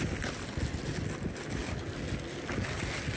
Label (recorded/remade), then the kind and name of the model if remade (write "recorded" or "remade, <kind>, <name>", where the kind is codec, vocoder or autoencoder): recorded